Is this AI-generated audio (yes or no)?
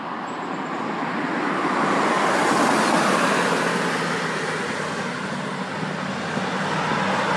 no